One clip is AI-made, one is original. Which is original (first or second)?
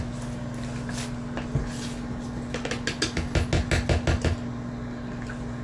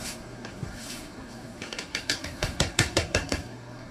first